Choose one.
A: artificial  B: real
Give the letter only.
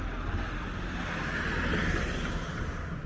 B